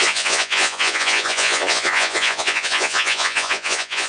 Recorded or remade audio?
remade